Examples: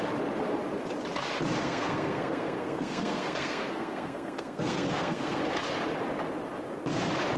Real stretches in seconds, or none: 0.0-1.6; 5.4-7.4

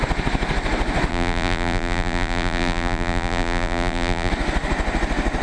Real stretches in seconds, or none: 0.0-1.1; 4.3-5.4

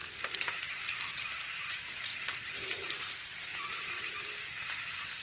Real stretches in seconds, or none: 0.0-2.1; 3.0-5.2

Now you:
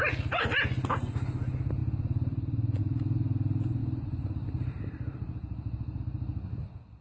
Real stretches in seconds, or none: 0.0-3.8; 6.0-7.0